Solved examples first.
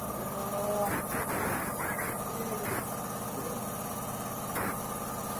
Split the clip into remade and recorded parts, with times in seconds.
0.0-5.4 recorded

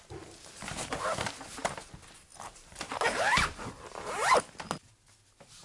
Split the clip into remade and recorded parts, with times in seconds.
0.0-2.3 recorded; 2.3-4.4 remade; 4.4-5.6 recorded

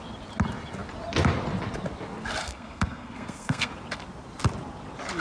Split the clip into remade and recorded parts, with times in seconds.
0.0-2.4 recorded; 2.4-3.7 remade; 3.7-5.2 recorded

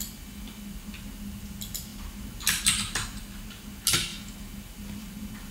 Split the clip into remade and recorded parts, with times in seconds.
0.0-5.5 recorded

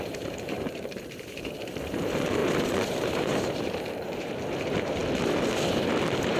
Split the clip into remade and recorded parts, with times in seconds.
0.0-5.0 remade; 5.0-5.7 recorded; 5.7-6.4 remade

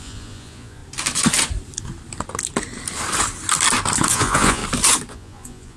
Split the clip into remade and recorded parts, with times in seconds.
0.0-0.8 remade; 0.8-4.1 recorded; 4.1-4.6 remade; 4.6-5.1 recorded; 5.1-5.8 remade

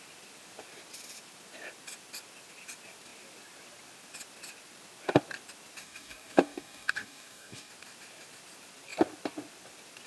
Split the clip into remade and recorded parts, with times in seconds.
0.0-5.8 recorded; 5.8-7.7 remade; 7.7-10.1 recorded